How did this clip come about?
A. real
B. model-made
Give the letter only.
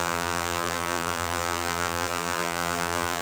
B